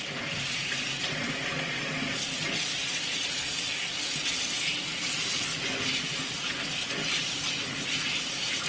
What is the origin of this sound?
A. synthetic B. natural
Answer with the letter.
B